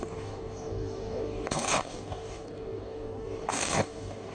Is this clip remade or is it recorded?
remade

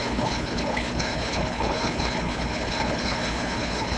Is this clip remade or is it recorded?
remade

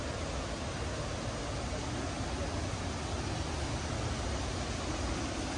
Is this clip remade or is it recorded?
recorded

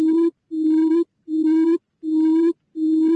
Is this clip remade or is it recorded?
recorded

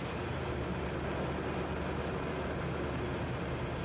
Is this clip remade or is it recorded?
recorded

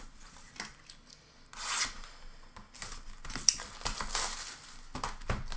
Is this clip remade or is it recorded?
recorded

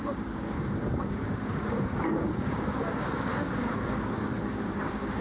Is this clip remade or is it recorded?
remade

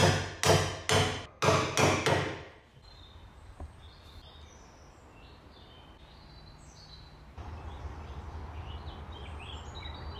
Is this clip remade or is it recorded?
recorded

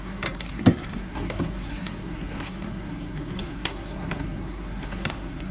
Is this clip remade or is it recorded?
remade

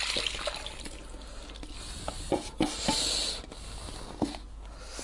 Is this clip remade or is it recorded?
recorded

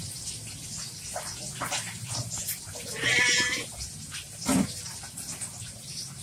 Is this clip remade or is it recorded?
recorded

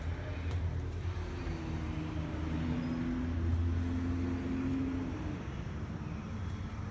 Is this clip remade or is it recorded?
recorded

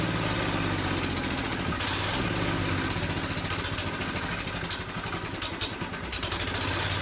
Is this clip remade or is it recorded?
recorded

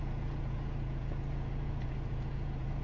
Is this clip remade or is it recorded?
remade